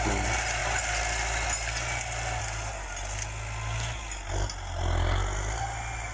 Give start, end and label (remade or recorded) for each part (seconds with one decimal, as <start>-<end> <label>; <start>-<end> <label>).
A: 0.0-6.1 recorded

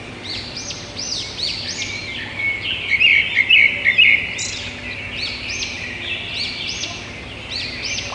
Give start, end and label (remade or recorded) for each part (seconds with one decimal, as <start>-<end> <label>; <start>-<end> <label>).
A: 0.0-8.1 recorded

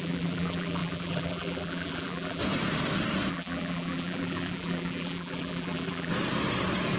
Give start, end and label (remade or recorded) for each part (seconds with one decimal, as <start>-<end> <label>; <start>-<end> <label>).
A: 0.0-2.4 remade; 2.4-3.3 recorded; 3.3-6.1 remade; 6.1-7.0 recorded

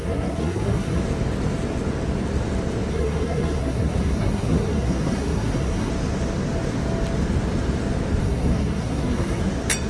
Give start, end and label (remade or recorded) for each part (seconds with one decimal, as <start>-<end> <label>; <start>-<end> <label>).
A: 0.0-1.0 remade; 1.0-2.9 recorded; 2.9-5.9 remade; 5.9-8.2 recorded; 8.2-9.4 remade; 9.4-9.9 recorded